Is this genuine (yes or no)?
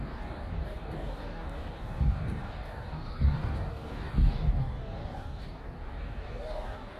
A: no